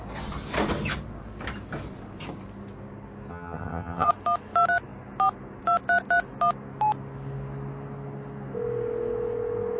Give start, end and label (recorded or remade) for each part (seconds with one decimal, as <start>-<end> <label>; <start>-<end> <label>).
0.0-3.3 recorded; 3.3-4.1 remade; 4.1-9.8 recorded